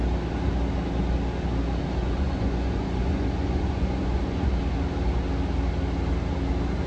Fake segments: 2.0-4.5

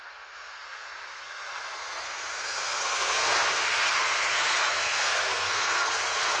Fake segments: 0.0-6.4

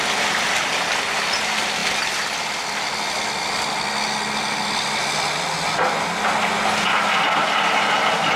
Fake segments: none

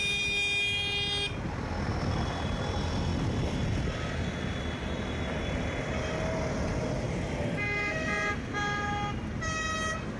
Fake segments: none

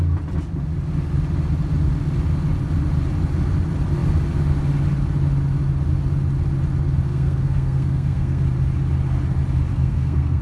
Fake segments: 7.1-8.4; 9.7-10.4

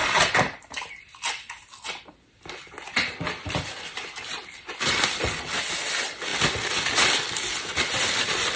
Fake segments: 0.0-5.2; 6.3-8.6

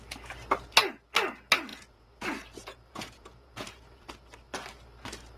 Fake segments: 1.7-4.1